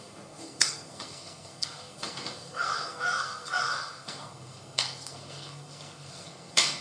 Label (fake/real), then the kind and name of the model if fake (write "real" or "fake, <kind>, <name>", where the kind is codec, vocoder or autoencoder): fake, codec, SNAC